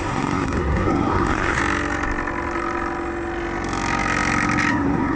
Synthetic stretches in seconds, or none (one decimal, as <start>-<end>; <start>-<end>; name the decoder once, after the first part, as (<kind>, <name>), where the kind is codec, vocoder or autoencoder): 0.0-1.6 (codec, SNAC); 4.7-5.2